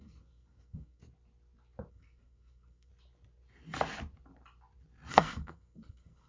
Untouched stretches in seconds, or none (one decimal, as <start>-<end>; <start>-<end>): 1.0-1.9; 2.9-5.1